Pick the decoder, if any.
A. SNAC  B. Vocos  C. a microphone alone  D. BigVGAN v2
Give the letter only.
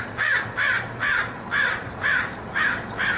C